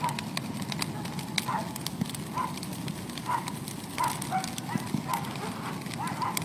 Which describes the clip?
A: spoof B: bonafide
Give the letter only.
B